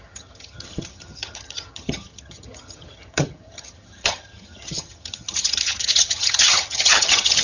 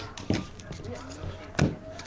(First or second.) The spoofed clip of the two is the first